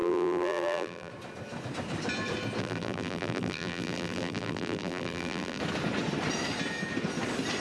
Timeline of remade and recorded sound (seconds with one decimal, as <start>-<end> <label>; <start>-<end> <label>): 0.0-1.1 remade; 1.1-2.6 recorded; 2.6-5.6 remade; 5.6-7.6 recorded